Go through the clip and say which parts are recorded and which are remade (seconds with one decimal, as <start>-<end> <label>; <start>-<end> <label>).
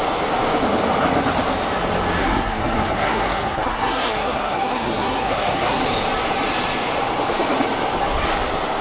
0.0-2.2 recorded; 2.2-5.8 remade; 5.8-8.8 recorded